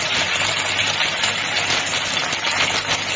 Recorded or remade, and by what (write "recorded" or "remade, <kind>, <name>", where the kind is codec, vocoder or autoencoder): recorded